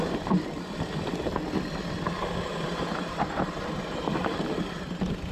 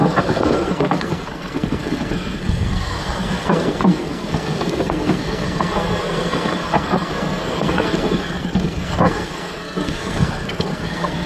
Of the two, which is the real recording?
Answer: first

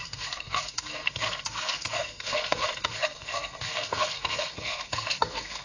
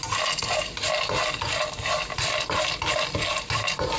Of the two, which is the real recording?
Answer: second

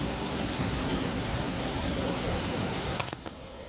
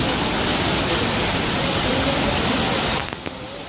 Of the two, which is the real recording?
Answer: second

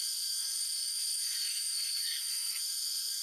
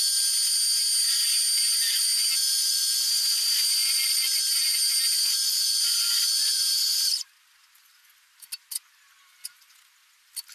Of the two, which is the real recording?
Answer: second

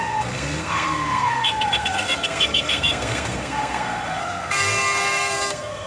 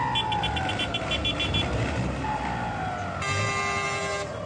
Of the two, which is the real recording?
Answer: second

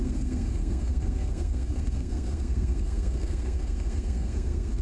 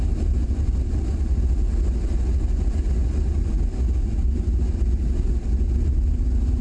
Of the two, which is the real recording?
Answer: second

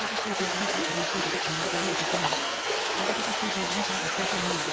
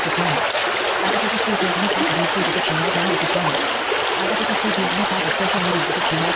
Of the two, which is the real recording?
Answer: second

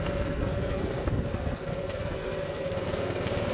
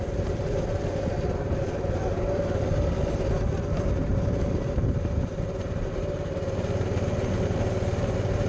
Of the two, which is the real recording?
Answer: second